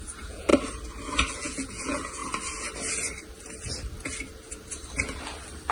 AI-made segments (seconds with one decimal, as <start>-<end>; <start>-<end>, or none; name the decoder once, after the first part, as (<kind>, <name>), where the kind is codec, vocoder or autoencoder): 0.0-0.5 (vocoder, Vocos); 1.3-2.2